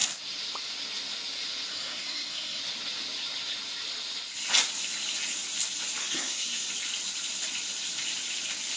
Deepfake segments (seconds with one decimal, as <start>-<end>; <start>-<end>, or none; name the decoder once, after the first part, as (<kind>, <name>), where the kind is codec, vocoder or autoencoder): 1.7-2.6 (codec, SNAC); 6.0-6.7